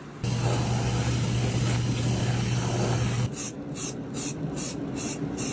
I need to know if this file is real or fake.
real